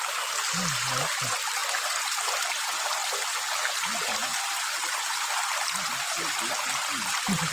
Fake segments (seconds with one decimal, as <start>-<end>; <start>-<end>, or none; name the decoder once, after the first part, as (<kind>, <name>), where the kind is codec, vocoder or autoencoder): none